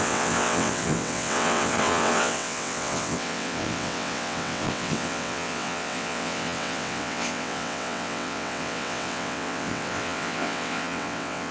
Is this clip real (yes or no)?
no